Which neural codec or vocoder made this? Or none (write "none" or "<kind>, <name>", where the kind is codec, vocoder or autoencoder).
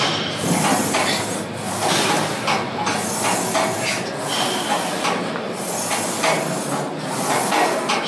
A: none